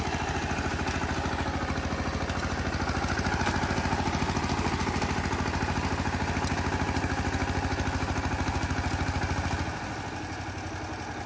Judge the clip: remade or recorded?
recorded